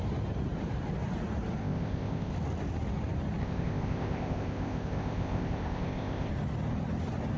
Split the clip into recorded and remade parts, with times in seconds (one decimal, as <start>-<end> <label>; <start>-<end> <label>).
0.0-1.6 recorded; 1.6-2.3 remade; 2.3-3.4 recorded; 3.4-6.3 remade; 6.3-7.4 recorded